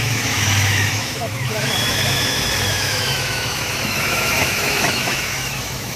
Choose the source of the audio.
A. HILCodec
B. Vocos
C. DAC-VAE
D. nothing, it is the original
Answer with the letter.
C